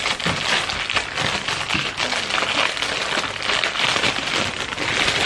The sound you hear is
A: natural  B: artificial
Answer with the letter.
A